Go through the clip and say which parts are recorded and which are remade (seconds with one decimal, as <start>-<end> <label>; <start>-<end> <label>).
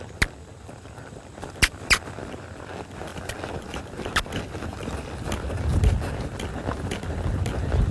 0.0-3.1 recorded; 3.1-3.8 remade; 3.8-4.7 recorded; 4.7-5.5 remade; 5.5-7.9 recorded